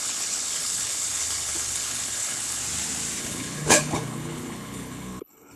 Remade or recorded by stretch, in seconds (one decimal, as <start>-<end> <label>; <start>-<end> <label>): 0.0-2.6 remade; 2.6-3.2 recorded; 3.2-5.6 remade